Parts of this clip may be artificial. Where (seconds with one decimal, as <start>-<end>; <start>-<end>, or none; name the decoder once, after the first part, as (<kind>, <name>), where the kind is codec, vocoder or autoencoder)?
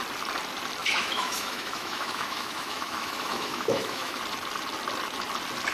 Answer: 0.8-4.2 (autoencoder, DAC-VAE)